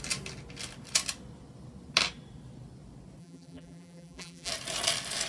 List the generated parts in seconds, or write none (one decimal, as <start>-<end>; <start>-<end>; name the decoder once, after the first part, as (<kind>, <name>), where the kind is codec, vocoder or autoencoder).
3.2-4.5 (vocoder, BigVGAN v2)